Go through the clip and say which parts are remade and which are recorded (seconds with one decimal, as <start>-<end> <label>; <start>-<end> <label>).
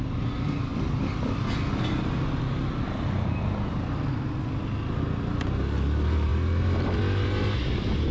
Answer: 0.0-8.1 recorded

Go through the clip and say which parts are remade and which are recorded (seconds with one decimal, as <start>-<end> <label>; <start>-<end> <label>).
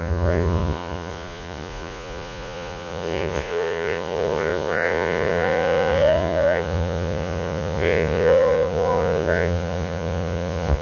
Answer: 0.0-10.8 remade